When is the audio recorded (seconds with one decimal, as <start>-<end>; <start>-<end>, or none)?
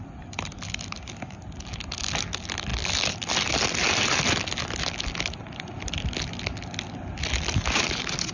0.0-8.3